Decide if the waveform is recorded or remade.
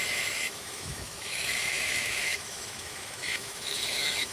remade